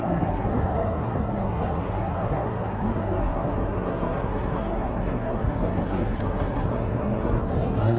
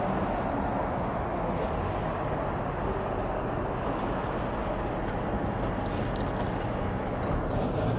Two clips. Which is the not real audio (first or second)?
first